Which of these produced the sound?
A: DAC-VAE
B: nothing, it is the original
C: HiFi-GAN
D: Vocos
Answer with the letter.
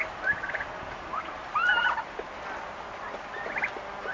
B